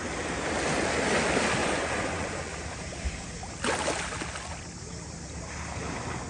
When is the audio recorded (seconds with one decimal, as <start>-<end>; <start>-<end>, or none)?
0.0-1.6; 2.5-6.3